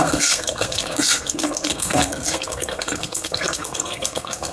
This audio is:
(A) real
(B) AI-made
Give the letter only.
B